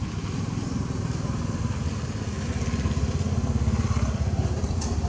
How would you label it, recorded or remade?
recorded